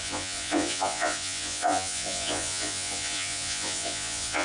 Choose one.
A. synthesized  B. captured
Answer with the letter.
A